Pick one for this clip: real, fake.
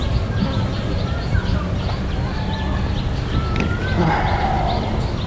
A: real